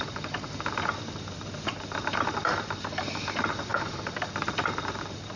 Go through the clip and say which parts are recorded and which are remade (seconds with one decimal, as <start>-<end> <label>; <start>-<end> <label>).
0.0-3.7 recorded; 3.7-4.3 remade; 4.3-5.4 recorded